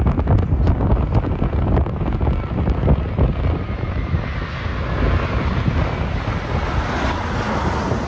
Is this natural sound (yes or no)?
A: yes